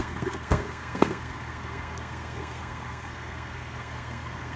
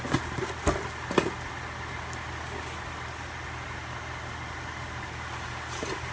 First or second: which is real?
second